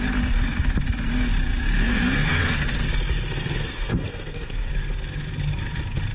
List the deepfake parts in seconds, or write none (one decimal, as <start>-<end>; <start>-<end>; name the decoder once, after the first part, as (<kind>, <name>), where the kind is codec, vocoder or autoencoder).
1.7-2.9 (codec, SNAC); 3.4-4.7